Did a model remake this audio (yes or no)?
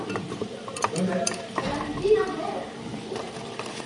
yes